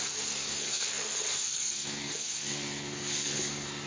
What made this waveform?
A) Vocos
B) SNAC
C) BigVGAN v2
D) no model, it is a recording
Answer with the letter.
B